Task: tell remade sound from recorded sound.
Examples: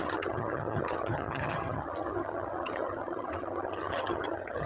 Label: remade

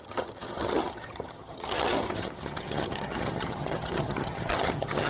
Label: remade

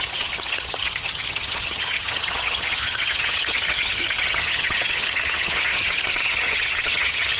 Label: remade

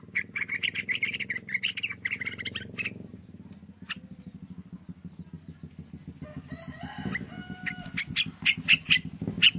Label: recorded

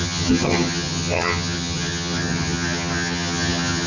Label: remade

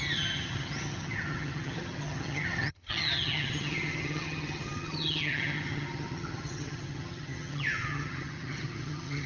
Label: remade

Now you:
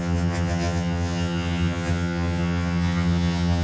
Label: remade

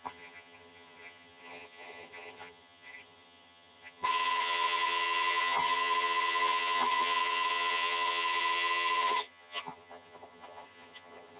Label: remade